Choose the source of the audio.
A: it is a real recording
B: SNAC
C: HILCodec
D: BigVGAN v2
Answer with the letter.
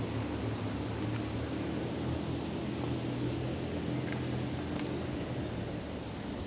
A